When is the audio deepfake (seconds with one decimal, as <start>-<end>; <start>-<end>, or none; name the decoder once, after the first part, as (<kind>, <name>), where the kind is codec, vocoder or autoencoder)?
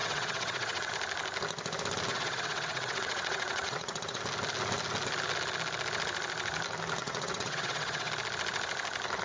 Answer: 0.0-0.9 (vocoder, WaveNeXt); 2.1-4.2; 7.0-8.1